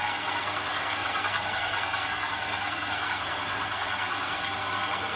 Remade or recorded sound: remade